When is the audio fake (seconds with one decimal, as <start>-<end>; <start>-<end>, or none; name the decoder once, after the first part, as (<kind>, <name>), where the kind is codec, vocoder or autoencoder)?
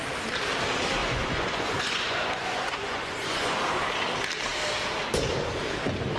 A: 1.0-3.6 (vocoder, Vocos)